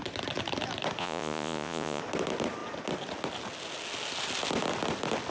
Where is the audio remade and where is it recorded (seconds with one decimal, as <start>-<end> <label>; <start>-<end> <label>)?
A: 0.0-1.0 recorded; 1.0-2.0 remade; 2.0-5.3 recorded